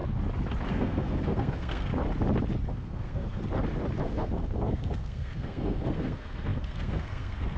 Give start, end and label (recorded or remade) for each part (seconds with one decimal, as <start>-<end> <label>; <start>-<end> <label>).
0.0-0.7 recorded; 0.7-1.9 remade; 1.9-2.7 recorded; 2.7-3.4 remade; 3.4-4.0 recorded; 4.0-7.6 remade